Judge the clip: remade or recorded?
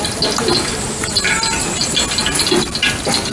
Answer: recorded